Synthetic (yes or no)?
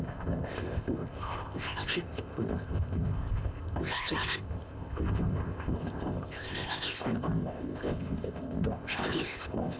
yes